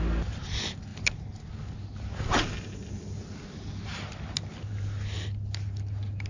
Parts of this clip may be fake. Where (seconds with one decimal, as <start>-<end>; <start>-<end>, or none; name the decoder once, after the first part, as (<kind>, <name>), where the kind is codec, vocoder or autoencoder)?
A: none